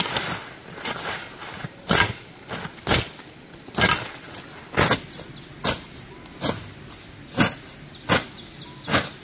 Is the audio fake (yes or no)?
no